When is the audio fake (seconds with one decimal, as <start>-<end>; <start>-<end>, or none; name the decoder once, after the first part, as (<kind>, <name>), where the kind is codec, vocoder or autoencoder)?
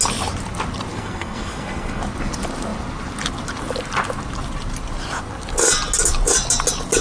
0.9-2.0 (codec, SNAC)